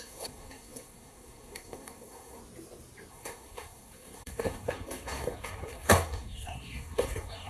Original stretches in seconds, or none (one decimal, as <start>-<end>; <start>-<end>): 2.4-3.1